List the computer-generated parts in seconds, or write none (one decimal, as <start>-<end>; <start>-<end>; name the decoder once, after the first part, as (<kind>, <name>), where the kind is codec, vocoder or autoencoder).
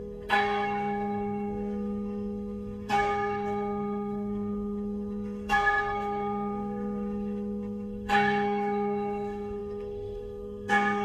0.0-11.0 (codec, SNAC)